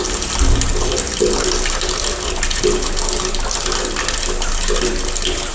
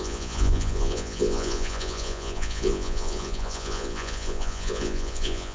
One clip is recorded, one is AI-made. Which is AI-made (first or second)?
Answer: second